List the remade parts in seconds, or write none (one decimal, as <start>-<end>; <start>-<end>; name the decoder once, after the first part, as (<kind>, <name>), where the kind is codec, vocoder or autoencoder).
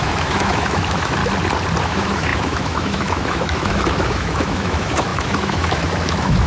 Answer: 0.0-1.2 (autoencoder, DAC-VAE); 1.8-6.5